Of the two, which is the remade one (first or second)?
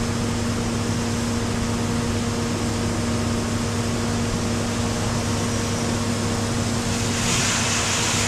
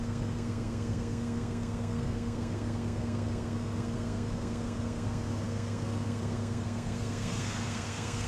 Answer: second